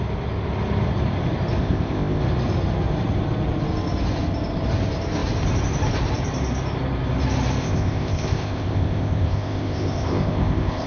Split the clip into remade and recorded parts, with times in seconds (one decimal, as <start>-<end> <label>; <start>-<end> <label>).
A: 0.0-1.6 recorded; 1.6-2.2 remade; 2.2-7.6 recorded; 7.6-10.9 remade